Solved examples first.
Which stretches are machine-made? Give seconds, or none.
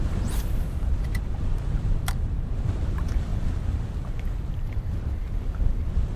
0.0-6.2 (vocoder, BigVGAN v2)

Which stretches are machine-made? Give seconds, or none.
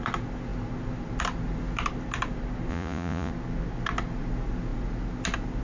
2.7-3.3 (vocoder, Vocos)